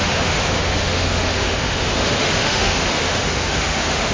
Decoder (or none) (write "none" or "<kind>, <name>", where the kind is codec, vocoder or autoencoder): autoencoder, DAC-VAE